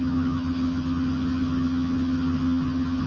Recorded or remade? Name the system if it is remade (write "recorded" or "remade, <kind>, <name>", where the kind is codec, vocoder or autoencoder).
remade, vocoder, HiFi-GAN